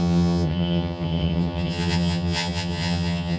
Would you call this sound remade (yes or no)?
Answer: yes